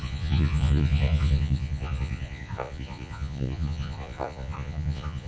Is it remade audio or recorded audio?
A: remade